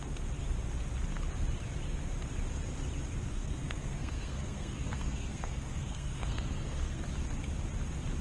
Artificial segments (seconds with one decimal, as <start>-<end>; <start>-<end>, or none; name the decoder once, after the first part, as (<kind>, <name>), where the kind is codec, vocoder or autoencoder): 3.3-7.0 (codec, SNAC)